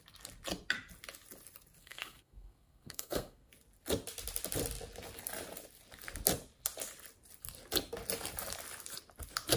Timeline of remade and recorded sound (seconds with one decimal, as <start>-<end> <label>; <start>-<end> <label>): 0.0-1.8 recorded; 1.8-3.5 remade; 3.5-9.6 recorded